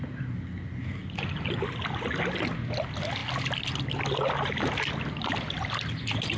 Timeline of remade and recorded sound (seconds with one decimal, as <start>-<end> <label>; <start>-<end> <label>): 0.0-6.4 recorded

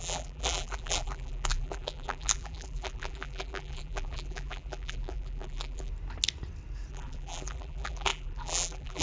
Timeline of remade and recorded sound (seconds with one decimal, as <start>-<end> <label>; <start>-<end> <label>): 0.0-5.9 remade; 5.9-6.9 recorded; 6.9-9.0 remade

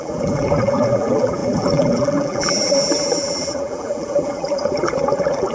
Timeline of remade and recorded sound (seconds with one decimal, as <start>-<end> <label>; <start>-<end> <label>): 0.0-5.5 remade

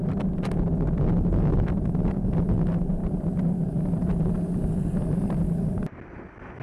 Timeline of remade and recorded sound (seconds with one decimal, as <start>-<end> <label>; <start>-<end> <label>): 0.0-3.0 recorded; 3.0-4.3 remade; 4.3-6.6 recorded

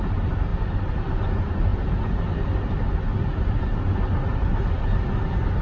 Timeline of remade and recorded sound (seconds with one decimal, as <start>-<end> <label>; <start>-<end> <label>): 0.0-5.6 recorded

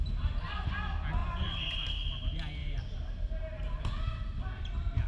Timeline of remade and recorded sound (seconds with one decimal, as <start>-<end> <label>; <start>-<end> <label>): 0.0-2.6 recorded; 2.6-3.8 remade; 3.8-5.1 recorded

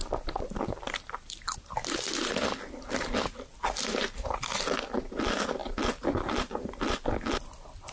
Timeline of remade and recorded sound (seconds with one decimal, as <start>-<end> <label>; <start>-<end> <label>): 0.0-1.6 remade; 1.6-5.6 recorded; 5.6-6.8 remade; 6.8-7.9 recorded